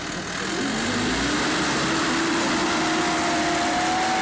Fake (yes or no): no